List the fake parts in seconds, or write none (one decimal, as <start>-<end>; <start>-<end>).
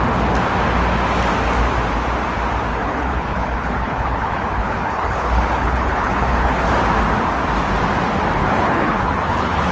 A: 2.7-6.7; 8.4-9.7